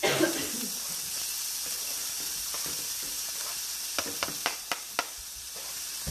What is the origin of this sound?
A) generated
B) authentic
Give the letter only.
B